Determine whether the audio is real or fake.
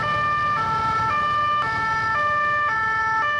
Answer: real